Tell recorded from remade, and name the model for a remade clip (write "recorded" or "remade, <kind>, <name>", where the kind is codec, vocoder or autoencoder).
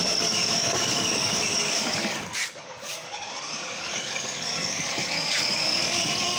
remade, codec, DAC